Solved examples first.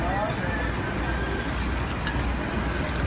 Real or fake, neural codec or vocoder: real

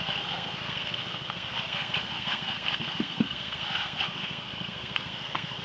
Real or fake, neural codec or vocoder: fake, codec, SNAC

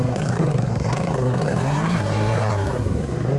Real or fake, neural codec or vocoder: fake, codec, SNAC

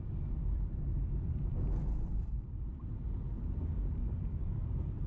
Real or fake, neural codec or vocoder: fake, vocoder, BigVGAN v2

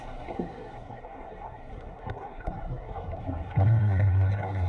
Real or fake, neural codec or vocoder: fake, codec, SNAC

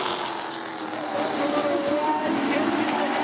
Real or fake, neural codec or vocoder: real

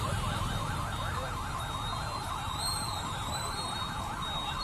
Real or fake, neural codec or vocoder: real